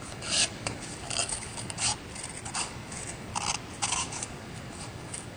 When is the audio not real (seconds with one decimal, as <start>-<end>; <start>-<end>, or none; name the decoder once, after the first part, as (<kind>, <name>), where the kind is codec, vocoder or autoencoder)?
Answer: 0.0-1.9 (codec, DAC); 2.6-3.3; 3.8-5.4